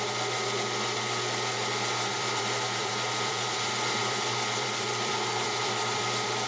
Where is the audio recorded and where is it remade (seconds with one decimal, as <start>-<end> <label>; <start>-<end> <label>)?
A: 0.0-2.1 recorded; 2.1-6.0 remade; 6.0-6.5 recorded